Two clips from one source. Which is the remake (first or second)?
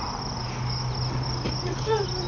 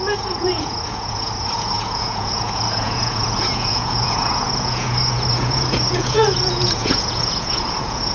second